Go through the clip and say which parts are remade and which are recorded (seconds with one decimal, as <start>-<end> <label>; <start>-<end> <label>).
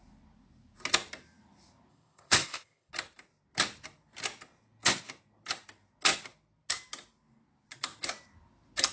0.0-1.9 recorded; 1.9-2.9 remade; 2.9-8.9 recorded